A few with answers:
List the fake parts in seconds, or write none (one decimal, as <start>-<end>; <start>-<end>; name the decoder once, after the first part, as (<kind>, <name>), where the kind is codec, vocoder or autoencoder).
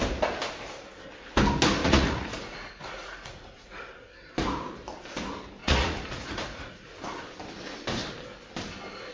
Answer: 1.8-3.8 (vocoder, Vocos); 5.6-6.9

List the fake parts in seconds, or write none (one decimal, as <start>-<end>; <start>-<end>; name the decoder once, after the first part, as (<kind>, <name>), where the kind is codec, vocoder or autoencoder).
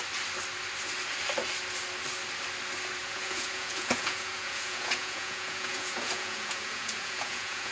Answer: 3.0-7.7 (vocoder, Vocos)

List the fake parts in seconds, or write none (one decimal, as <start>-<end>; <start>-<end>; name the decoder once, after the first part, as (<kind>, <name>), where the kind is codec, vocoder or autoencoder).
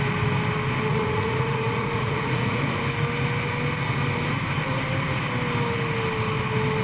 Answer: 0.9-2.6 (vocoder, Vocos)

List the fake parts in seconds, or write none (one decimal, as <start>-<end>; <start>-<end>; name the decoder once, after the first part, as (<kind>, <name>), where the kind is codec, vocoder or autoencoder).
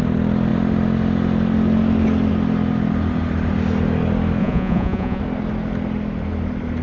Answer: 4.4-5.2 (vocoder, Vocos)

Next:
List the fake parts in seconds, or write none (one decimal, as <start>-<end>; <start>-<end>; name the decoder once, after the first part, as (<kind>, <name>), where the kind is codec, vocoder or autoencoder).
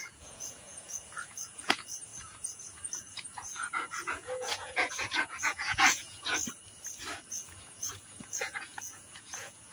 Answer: 0.0-6.4 (vocoder, Vocos); 7.3-9.7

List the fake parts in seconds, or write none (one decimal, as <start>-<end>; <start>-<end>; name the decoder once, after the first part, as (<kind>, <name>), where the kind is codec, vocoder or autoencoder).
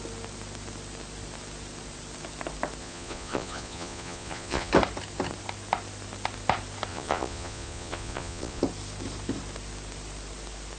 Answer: 2.8-4.7 (vocoder, Vocos); 6.9-8.6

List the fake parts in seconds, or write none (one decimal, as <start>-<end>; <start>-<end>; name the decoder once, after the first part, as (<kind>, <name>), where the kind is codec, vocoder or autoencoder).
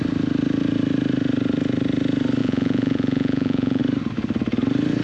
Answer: 2.4-3.8 (vocoder, Vocos)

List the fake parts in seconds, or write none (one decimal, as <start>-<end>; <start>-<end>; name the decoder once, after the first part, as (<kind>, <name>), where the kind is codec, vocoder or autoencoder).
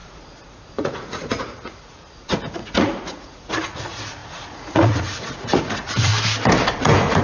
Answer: 0.0-6.1 (vocoder, Vocos); 6.8-7.2